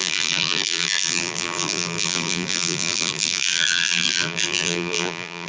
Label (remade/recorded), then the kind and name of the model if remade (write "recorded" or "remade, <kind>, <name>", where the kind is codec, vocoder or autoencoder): remade, vocoder, BigVGAN v2